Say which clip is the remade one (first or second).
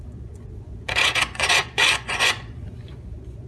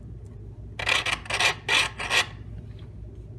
first